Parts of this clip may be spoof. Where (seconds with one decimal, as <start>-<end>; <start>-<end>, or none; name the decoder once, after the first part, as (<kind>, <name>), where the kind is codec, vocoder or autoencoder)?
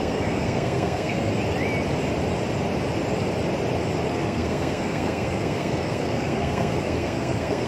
0.0-1.3 (codec, SNAC); 4.1-7.7